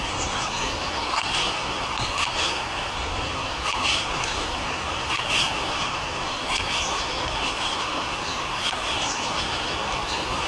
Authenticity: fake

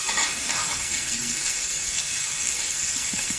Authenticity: fake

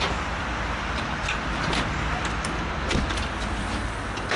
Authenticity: real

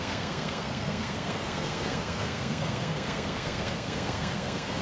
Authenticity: fake